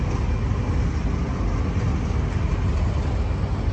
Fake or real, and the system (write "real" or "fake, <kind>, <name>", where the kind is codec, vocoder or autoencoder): real